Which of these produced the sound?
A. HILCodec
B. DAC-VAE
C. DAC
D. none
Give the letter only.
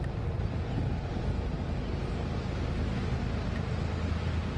D